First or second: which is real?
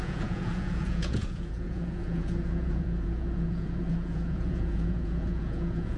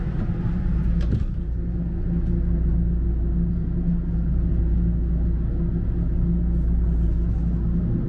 second